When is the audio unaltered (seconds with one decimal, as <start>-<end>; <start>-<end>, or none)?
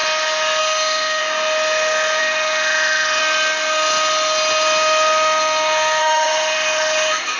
0.0-0.6; 1.2-2.2; 3.2-6.0